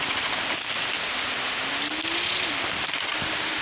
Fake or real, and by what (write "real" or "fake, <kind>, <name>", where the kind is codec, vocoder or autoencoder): real